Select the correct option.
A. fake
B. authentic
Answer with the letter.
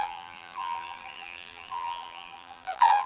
A